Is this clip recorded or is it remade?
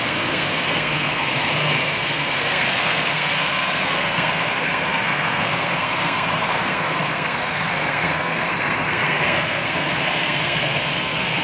remade